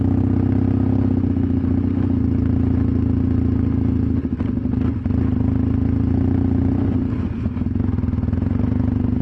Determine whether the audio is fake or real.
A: real